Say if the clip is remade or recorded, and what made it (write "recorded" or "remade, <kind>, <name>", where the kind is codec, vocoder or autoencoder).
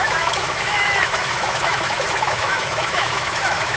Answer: remade, autoencoder, DAC-VAE